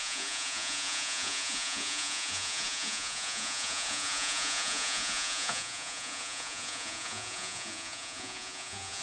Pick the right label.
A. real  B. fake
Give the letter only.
B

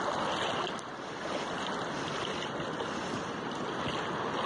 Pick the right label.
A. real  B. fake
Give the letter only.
A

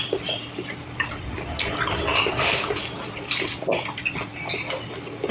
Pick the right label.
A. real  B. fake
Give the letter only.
A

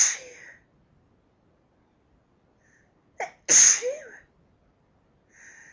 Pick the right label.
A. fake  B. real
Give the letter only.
B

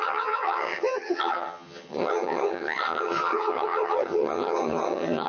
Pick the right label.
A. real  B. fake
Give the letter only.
B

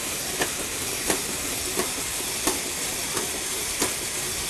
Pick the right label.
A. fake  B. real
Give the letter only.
A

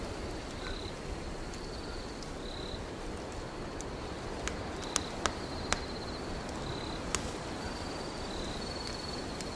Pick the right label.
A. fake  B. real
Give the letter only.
B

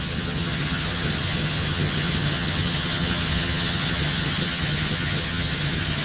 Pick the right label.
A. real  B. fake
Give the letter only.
B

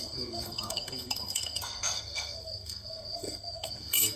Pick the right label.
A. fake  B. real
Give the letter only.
A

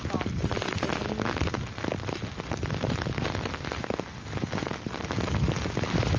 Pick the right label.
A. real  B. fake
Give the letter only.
A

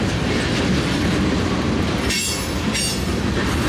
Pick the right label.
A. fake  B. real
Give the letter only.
B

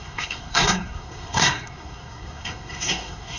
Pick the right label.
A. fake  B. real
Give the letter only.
A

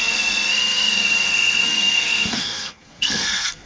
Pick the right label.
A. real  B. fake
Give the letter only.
B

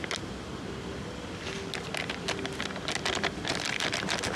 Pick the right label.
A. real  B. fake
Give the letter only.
A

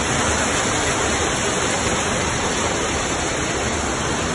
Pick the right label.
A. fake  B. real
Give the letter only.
B